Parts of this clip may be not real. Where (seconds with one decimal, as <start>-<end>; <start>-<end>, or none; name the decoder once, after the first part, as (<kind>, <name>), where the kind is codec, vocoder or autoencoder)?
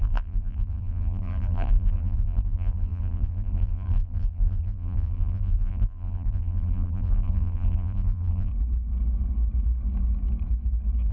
0.0-8.5 (vocoder, BigVGAN v2)